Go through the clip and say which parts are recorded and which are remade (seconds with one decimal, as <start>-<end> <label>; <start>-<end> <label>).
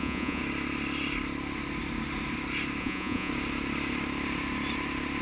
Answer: 0.0-0.4 remade; 0.4-2.8 recorded; 2.8-3.3 remade; 3.3-5.2 recorded